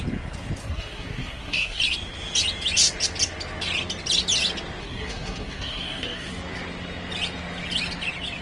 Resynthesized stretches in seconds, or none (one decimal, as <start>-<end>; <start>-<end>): 0.6-1.8; 4.8-6.3